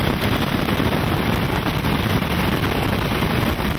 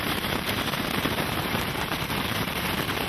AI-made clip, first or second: second